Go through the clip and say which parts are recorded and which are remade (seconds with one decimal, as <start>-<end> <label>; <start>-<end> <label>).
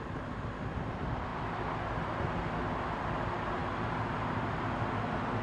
0.0-5.4 recorded